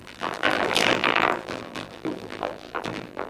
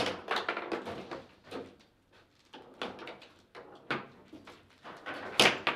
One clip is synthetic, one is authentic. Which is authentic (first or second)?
second